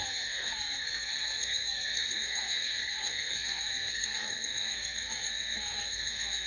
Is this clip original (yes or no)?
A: no